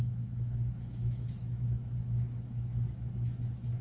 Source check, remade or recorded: remade